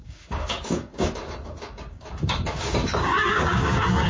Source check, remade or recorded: remade